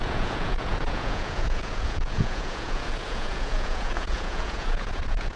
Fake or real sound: fake